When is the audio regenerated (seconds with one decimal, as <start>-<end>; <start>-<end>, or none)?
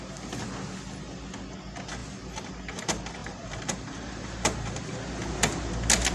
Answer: 2.0-2.5; 3.2-5.0